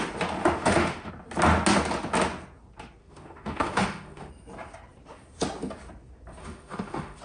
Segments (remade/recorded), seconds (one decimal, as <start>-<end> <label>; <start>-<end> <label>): 0.0-0.4 recorded; 0.4-1.1 remade; 1.1-3.0 recorded; 3.0-4.3 remade; 4.3-6.4 recorded; 6.4-7.2 remade

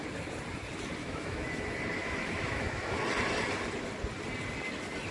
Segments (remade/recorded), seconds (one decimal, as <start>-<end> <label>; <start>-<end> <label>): 0.0-1.0 recorded; 1.0-1.6 remade; 1.6-2.0 recorded; 2.0-3.0 remade; 3.0-5.1 recorded

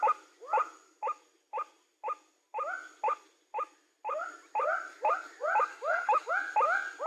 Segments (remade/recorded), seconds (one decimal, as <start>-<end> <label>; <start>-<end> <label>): 0.0-5.7 recorded; 5.7-6.3 remade; 6.3-7.1 recorded

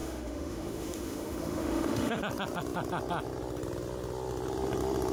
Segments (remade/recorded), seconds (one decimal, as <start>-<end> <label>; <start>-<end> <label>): 0.0-2.2 remade; 2.2-5.1 recorded

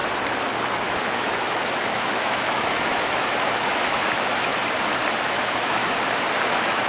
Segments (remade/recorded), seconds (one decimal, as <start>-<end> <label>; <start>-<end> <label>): 0.0-0.8 recorded; 0.8-4.5 remade; 4.5-5.3 recorded; 5.3-5.8 remade; 5.8-6.5 recorded; 6.5-6.9 remade

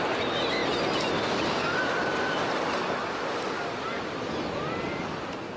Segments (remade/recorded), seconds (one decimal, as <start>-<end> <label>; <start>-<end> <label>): 0.0-5.6 recorded

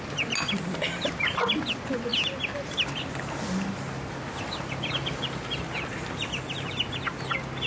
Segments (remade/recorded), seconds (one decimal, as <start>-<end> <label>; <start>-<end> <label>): 0.0-7.7 recorded